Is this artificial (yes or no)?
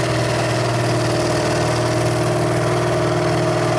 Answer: no